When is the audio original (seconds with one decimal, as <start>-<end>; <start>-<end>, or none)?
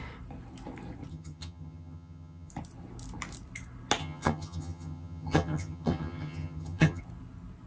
0.0-1.1; 2.5-4.0; 7.0-7.7